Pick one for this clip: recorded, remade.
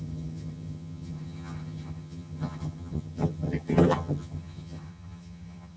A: remade